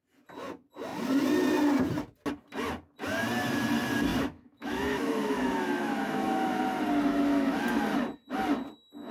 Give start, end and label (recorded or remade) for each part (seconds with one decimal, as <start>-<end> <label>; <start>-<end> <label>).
0.0-4.1 recorded; 4.1-6.6 remade; 6.6-7.1 recorded; 7.1-7.7 remade; 7.7-9.1 recorded